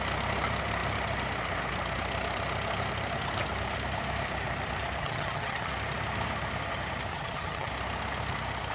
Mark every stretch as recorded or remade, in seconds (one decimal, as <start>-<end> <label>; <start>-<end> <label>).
0.0-5.0 recorded; 5.0-5.7 remade; 5.7-7.1 recorded; 7.1-7.7 remade; 7.7-8.7 recorded